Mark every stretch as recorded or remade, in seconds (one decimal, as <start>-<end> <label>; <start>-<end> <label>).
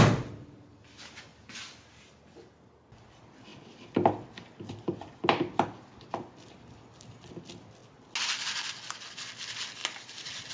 0.0-10.5 recorded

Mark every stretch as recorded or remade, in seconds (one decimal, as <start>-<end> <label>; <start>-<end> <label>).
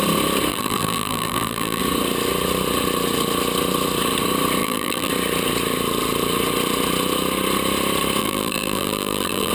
0.0-0.5 recorded; 0.5-1.8 remade; 1.8-4.6 recorded; 4.6-5.1 remade; 5.1-8.2 recorded; 8.2-9.5 remade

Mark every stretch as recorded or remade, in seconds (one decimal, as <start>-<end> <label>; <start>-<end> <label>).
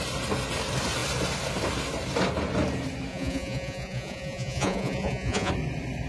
0.0-3.1 recorded; 3.1-5.5 remade; 5.5-6.1 recorded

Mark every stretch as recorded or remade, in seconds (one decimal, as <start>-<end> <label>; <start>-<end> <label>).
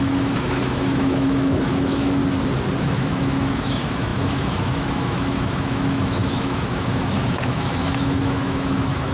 0.0-2.2 remade; 2.2-2.8 recorded; 2.8-9.1 remade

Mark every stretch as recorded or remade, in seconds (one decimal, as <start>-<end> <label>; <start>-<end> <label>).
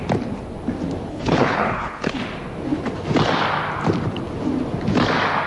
0.0-1.1 recorded; 1.1-2.2 remade; 2.2-5.5 recorded